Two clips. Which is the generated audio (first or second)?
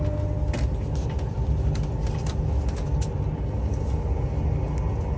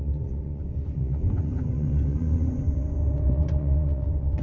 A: second